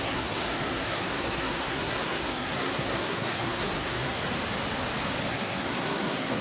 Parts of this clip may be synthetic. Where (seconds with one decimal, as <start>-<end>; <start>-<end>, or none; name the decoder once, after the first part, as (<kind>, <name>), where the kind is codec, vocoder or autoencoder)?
0.0-4.2 (codec, SNAC); 5.3-6.4